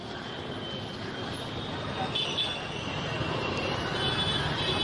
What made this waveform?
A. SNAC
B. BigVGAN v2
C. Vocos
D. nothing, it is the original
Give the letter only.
D